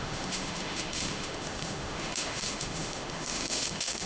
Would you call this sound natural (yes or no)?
no